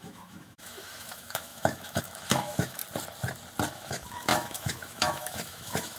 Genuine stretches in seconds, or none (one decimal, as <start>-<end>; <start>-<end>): 2.8-3.7